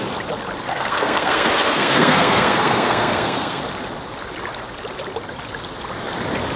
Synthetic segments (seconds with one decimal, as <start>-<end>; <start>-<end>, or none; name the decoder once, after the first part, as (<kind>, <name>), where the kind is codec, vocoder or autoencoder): 0.7-3.6 (codec, SNAC)